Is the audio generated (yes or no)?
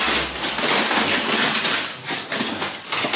no